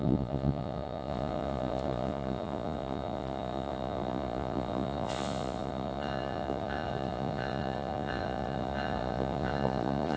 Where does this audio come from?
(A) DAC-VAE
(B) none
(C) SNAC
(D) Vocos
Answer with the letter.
D